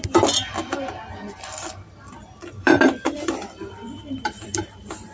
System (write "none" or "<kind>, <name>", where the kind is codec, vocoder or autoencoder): vocoder, BigVGAN v2